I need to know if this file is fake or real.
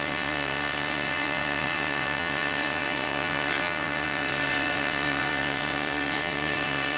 fake